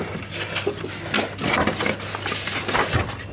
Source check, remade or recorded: recorded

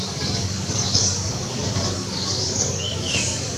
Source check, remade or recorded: remade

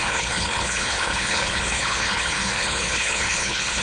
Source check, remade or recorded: remade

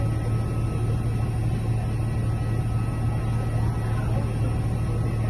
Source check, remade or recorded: recorded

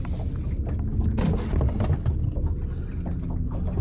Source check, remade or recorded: recorded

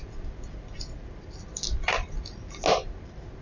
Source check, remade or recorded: recorded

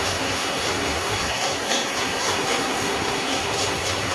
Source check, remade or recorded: remade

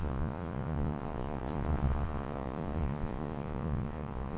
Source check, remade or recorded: remade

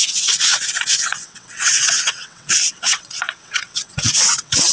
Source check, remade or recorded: remade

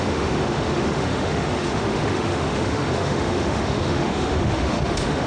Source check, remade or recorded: remade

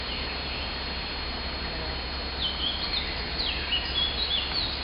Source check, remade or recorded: recorded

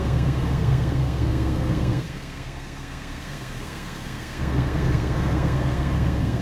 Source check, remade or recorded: remade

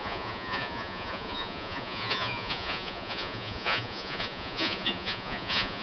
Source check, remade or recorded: remade